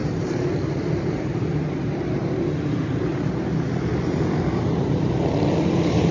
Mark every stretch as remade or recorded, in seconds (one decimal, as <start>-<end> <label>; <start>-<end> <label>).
0.0-2.2 remade; 2.2-4.6 recorded; 4.6-6.1 remade